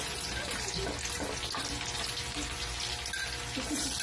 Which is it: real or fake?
real